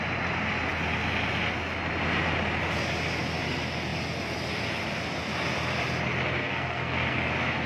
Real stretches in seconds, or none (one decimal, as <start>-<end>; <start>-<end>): 0.0-6.4; 7.3-7.7